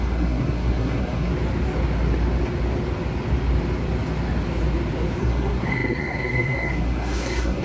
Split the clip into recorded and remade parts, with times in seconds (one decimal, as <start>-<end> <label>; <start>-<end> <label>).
0.0-1.3 remade; 1.3-5.2 recorded; 5.2-7.6 remade